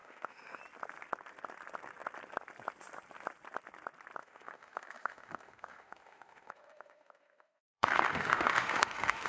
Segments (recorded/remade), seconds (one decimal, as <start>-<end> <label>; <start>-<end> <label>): 0.0-0.6 remade; 0.6-4.2 recorded; 4.2-9.3 remade